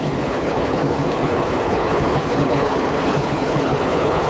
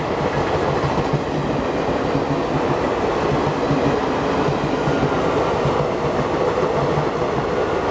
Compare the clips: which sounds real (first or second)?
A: second